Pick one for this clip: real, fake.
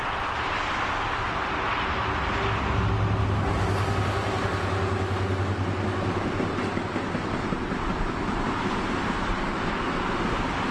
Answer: real